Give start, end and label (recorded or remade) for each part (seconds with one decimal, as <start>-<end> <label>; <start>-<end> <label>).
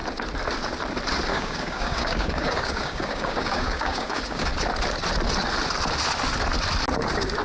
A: 0.0-1.3 recorded; 1.3-4.5 remade; 4.5-7.4 recorded